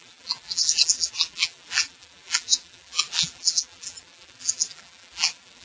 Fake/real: fake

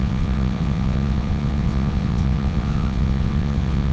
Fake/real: fake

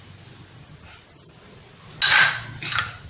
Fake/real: real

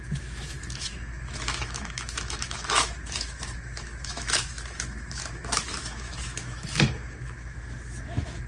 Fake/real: fake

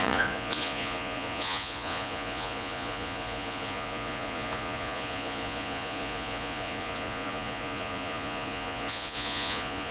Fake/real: fake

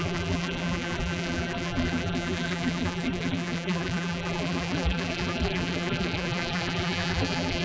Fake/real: fake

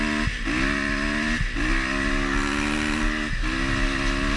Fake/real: real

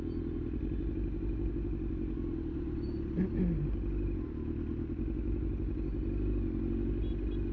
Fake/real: real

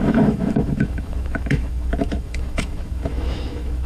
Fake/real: fake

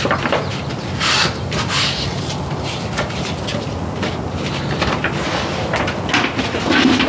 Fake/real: real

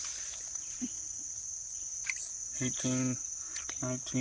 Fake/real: real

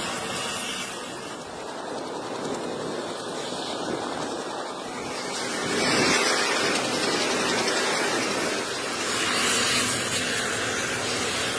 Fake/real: real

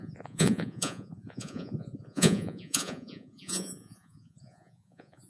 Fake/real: fake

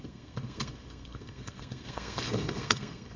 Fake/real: fake